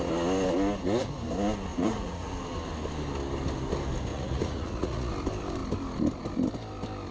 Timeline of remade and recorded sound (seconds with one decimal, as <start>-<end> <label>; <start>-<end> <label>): 0.0-1.7 recorded; 1.7-2.3 remade; 2.3-4.1 recorded; 4.1-5.1 remade; 5.1-7.1 recorded